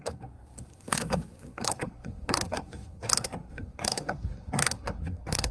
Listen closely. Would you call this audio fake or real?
fake